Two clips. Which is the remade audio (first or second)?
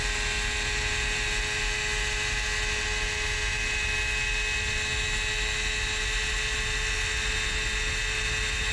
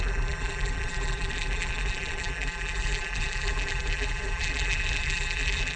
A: second